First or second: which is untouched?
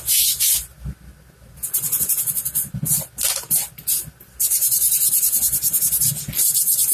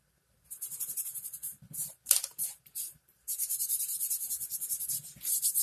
first